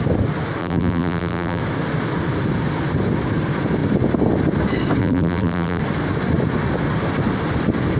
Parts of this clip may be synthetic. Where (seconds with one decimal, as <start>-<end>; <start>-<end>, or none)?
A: 0.6-1.6; 5.0-5.8